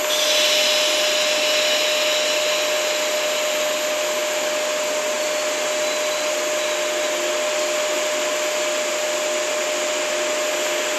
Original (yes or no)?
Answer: yes